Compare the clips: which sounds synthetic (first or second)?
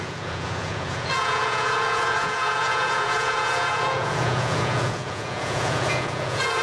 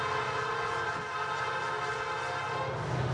first